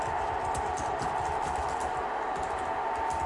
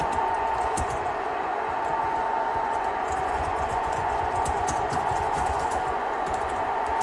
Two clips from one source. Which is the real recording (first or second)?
first